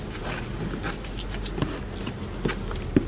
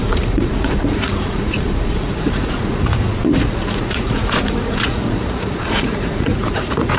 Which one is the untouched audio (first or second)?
first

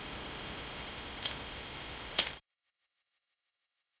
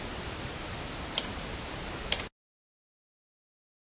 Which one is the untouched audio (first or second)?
second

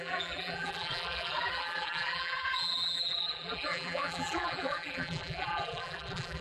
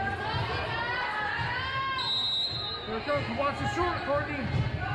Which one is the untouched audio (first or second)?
second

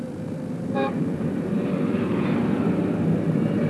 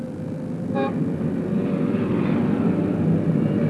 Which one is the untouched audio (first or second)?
second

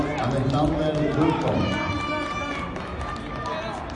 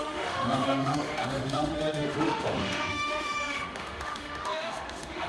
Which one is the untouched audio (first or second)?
first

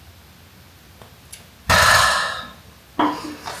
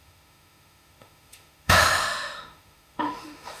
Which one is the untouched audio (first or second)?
first